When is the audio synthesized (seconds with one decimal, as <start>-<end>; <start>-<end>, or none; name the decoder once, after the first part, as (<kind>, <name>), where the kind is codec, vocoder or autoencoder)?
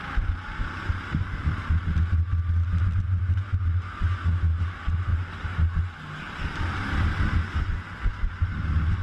none